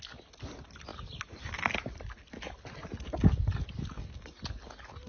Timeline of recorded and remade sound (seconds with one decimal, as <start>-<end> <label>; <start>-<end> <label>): 0.0-5.1 recorded